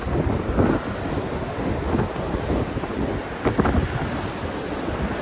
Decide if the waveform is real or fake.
real